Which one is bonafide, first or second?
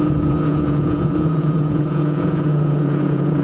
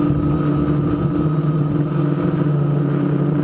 second